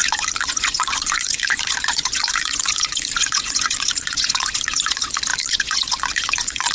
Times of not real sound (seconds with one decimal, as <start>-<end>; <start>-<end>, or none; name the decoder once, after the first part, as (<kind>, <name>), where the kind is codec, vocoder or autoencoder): 0.0-6.7 (vocoder, Vocos)